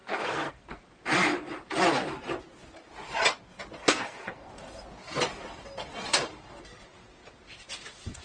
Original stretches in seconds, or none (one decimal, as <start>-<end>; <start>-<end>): 0.8-3.8; 4.5-8.2